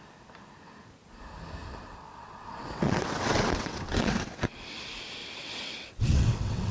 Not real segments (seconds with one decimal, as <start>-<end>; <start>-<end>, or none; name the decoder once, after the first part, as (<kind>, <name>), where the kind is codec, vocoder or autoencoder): 2.1-4.8 (vocoder, WaveNeXt); 5.2-6.7